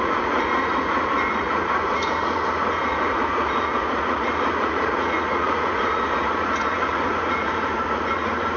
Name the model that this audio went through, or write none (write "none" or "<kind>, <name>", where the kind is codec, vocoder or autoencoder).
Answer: vocoder, Vocos